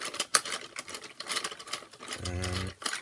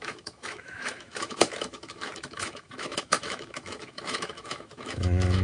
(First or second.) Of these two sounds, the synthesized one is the second